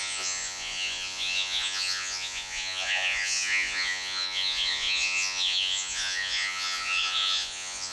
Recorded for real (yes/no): no